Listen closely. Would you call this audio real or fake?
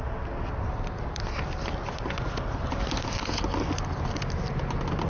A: real